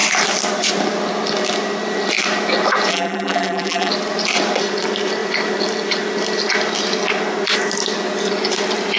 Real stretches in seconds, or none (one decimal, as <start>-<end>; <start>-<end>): 0.0-2.9; 3.9-9.0